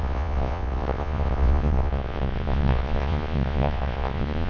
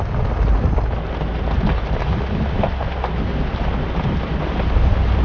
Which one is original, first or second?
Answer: second